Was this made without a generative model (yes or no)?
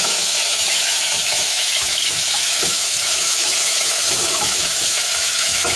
no